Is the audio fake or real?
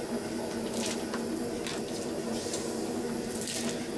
real